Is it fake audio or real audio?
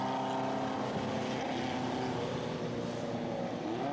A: real